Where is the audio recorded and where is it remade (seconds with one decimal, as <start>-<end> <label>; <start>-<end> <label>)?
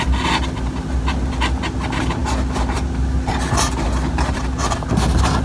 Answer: 0.0-5.4 recorded